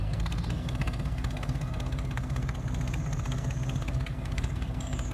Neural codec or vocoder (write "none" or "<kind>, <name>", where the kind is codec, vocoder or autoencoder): codec, SNAC